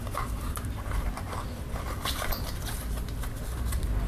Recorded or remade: remade